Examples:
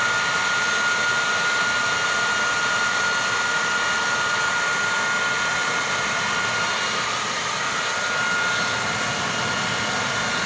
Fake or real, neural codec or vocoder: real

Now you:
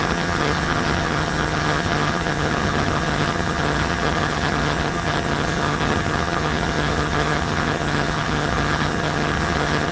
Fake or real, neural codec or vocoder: fake, vocoder, HiFi-GAN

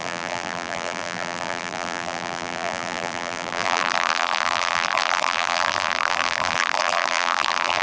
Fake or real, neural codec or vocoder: fake, vocoder, BigVGAN v2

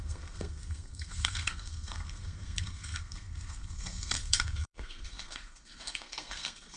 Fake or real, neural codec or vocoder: fake, codec, SNAC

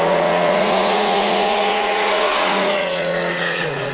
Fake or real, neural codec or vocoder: fake, vocoder, Vocos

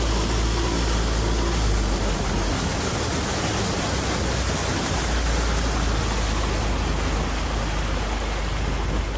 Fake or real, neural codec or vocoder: real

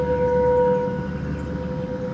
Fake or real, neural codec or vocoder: real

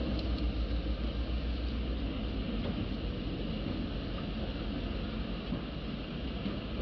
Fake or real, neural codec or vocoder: real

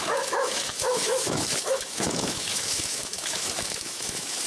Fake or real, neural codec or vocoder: fake, autoencoder, DAC-VAE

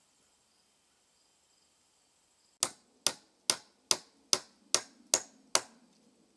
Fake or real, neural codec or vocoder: real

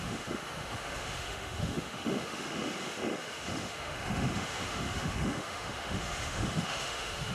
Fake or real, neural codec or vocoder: fake, autoencoder, DAC-VAE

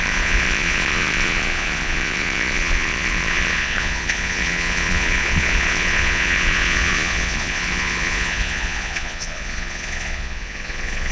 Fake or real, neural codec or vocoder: fake, vocoder, Vocos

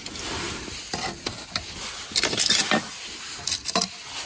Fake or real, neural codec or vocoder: real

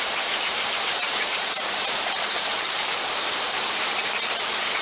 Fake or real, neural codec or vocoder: fake, vocoder, BigVGAN v2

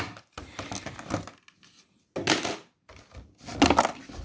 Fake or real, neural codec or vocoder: real